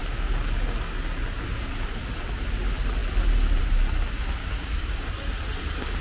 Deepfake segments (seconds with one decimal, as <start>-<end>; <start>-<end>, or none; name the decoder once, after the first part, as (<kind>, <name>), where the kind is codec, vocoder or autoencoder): 4.4-4.9 (codec, DAC)